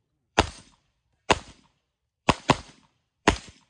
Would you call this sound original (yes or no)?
no